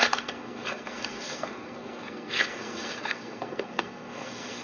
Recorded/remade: remade